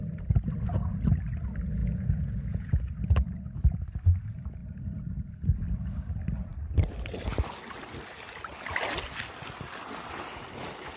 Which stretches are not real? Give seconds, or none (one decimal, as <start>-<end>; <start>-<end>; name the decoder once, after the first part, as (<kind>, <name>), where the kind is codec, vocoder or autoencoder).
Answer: 1.8-2.9 (vocoder, Vocos)